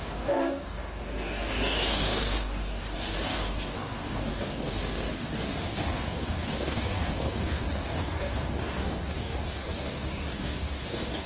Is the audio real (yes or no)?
no